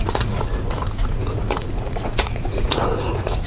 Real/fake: fake